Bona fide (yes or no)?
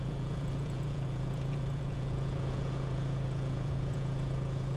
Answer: no